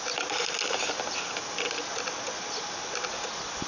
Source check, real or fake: real